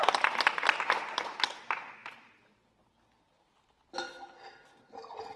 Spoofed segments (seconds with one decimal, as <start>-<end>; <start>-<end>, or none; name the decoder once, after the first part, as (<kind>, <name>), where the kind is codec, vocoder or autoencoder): none